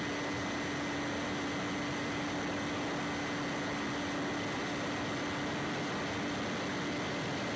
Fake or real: real